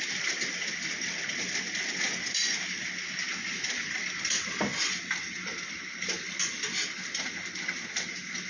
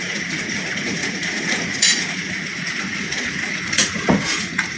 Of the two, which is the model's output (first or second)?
second